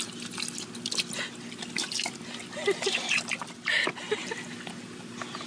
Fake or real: real